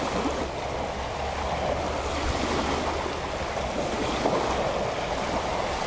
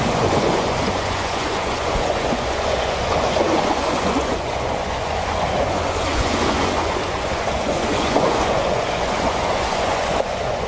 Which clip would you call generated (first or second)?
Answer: second